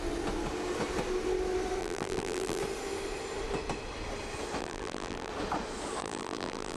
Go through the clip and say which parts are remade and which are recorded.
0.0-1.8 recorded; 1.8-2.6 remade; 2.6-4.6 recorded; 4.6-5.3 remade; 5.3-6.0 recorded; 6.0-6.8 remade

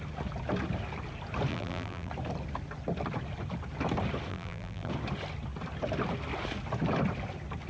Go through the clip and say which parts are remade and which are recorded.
0.0-1.5 recorded; 1.5-2.1 remade; 2.1-4.3 recorded; 4.3-4.9 remade; 4.9-7.7 recorded

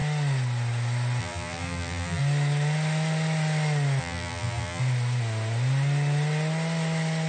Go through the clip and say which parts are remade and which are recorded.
0.0-1.2 recorded; 1.2-2.2 remade; 2.2-4.0 recorded; 4.0-4.8 remade; 4.8-7.3 recorded

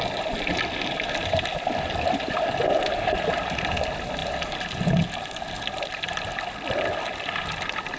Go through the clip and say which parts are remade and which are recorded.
0.0-4.2 remade; 4.2-6.7 recorded; 6.7-8.0 remade

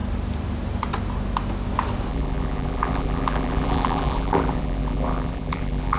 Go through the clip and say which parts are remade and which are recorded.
0.0-2.1 recorded; 2.1-6.0 remade